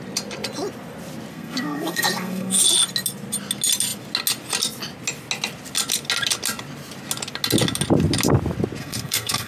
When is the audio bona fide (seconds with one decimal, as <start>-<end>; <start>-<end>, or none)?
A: 0.0-1.3; 2.6-8.8